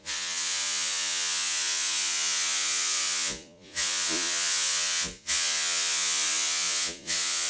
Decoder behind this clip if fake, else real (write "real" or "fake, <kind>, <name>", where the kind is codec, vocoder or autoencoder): fake, vocoder, Vocos